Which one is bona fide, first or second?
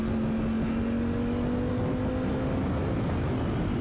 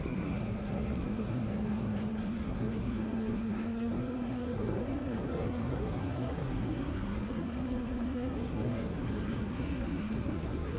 first